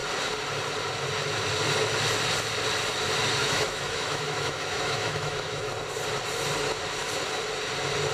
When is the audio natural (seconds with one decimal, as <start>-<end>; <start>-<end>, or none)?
0.0-3.4; 5.7-8.1